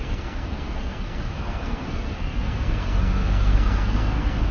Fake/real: fake